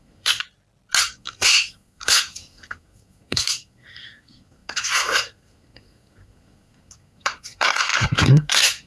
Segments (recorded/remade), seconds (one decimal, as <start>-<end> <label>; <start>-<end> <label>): 0.0-0.4 remade; 0.4-1.0 recorded; 1.0-8.9 remade